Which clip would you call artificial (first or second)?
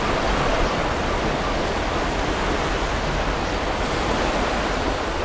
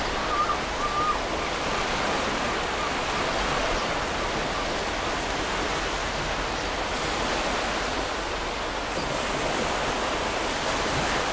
first